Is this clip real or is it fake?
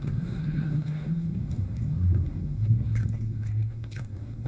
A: fake